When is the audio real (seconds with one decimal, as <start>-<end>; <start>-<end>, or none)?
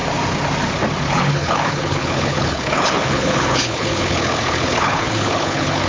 0.0-1.1